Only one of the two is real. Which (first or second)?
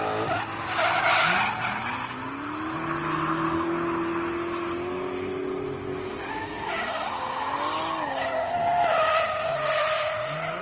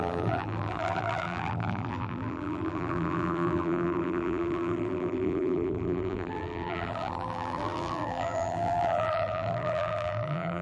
first